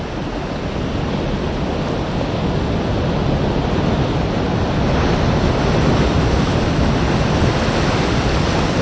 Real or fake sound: real